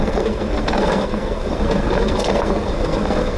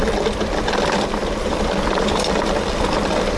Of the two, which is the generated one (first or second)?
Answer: first